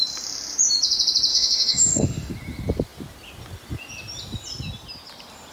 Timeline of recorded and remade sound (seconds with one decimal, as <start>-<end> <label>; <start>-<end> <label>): 0.0-1.3 recorded; 1.3-2.3 remade; 2.3-5.5 recorded